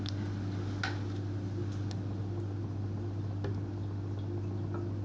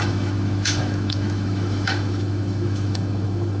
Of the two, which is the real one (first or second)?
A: first